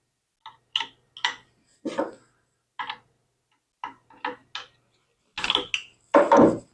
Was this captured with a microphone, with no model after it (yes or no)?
yes